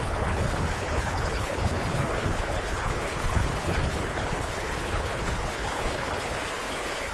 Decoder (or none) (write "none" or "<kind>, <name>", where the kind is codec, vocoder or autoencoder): codec, HILCodec